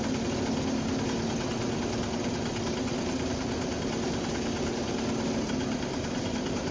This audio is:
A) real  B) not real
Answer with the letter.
A